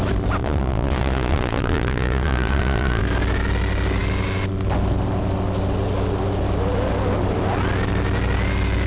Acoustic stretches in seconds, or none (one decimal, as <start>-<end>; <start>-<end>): 0.0-0.4; 3.0-8.9